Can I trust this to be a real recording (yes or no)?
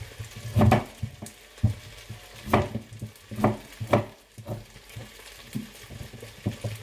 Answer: yes